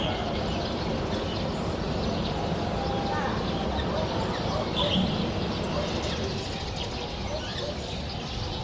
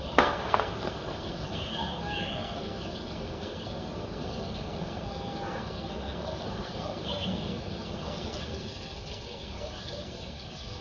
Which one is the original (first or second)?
first